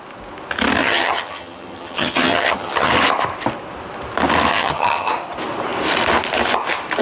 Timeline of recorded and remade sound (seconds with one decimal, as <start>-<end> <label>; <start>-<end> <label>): 0.0-0.8 recorded; 0.8-2.9 remade; 2.9-4.5 recorded; 4.5-5.1 remade; 5.1-7.0 recorded